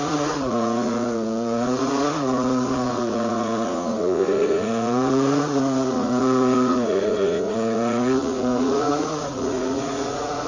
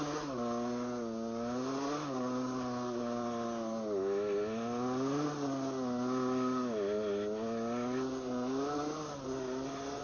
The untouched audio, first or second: second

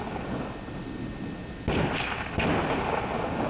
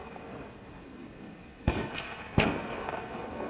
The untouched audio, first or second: first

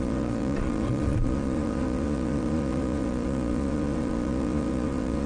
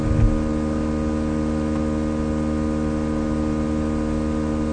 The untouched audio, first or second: second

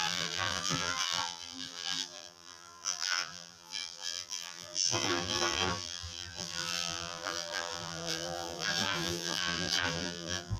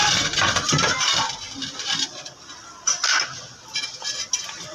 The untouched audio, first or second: second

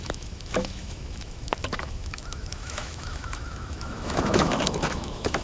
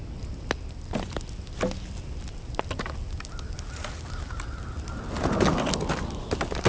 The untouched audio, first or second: second